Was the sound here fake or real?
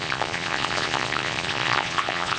fake